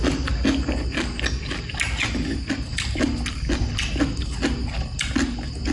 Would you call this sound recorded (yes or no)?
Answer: yes